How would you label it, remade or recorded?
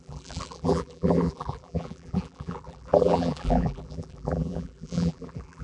remade